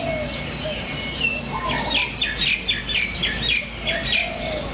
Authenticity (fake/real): real